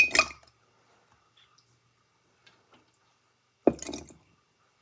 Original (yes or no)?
yes